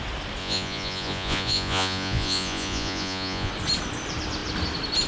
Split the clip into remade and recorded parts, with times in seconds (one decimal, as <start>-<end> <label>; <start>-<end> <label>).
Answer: 0.0-0.4 recorded; 0.4-3.5 remade; 3.5-5.1 recorded